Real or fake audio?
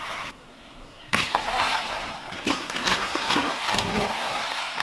fake